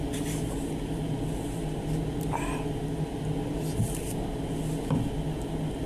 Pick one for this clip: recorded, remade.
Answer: recorded